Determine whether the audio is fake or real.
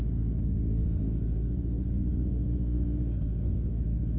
fake